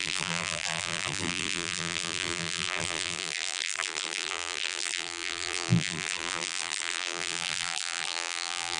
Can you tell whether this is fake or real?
fake